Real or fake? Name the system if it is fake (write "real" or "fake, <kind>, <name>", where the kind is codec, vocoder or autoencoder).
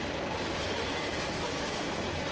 real